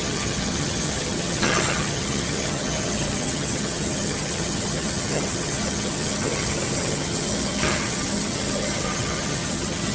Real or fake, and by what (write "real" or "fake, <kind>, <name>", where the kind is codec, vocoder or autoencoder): fake, vocoder, HiFi-GAN